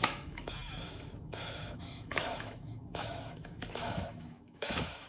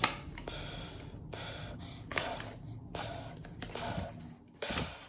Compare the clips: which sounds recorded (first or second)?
second